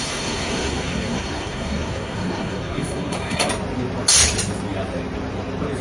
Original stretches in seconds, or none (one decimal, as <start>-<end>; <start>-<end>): 3.5-5.8